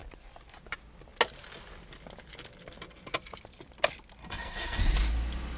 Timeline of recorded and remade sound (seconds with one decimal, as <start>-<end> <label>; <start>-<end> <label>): 0.0-4.2 recorded; 4.2-4.8 remade; 4.8-5.6 recorded